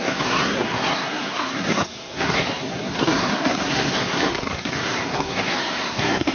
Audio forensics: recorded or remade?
remade